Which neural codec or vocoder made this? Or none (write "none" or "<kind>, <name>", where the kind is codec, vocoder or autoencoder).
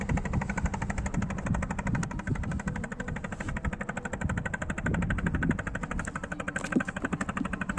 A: none